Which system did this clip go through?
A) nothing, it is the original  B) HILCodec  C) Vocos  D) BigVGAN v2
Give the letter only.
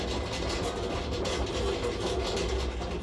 A